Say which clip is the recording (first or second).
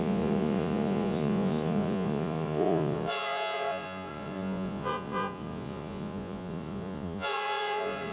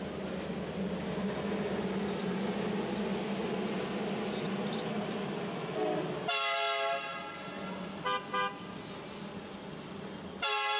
second